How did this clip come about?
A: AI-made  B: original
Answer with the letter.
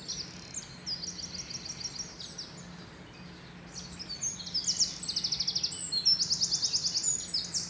B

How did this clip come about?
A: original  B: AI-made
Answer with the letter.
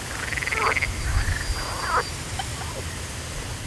A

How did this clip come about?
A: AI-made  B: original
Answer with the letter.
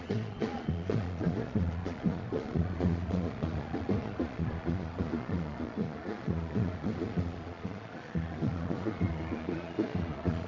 A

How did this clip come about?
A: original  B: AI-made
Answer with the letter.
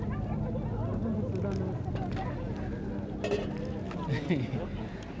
A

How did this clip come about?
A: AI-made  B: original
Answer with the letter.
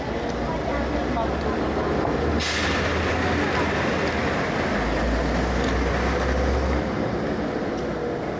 B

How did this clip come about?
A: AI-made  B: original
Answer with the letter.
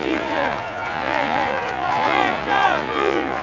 A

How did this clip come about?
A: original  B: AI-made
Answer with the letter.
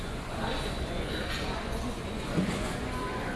B